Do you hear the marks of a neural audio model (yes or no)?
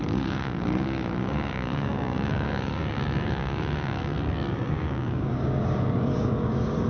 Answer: yes